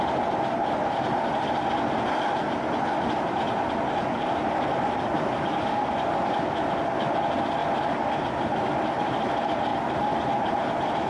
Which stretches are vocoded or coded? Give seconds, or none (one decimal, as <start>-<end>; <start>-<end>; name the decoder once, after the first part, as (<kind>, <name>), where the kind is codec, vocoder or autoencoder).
7.6-8.7 (vocoder, BigVGAN v2)